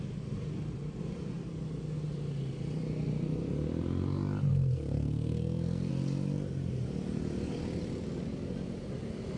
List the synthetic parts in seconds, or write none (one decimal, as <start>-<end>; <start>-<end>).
4.5-5.9